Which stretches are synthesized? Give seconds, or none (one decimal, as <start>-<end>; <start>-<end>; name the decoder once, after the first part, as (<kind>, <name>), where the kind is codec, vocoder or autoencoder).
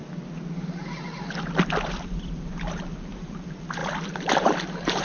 1.9-5.0 (vocoder, BigVGAN v2)